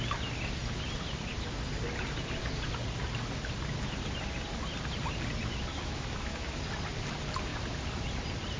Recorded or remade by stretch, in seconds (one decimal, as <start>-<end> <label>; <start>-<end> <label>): 0.0-5.7 recorded; 5.7-6.6 remade; 6.6-8.6 recorded